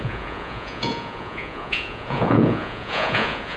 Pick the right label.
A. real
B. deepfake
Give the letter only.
B